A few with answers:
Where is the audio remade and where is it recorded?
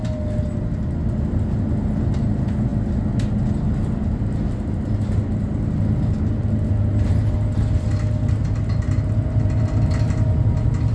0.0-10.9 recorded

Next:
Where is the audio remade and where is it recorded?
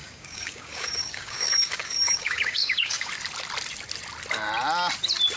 0.0-3.1 remade; 3.1-5.4 recorded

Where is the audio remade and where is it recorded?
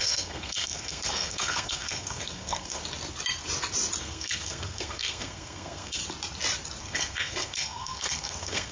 0.0-2.8 remade; 2.8-4.0 recorded; 4.0-6.0 remade; 6.0-6.8 recorded; 6.8-8.7 remade